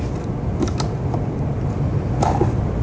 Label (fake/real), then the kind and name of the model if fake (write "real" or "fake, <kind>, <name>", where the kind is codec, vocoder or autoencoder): real